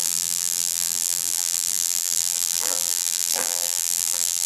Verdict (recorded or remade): remade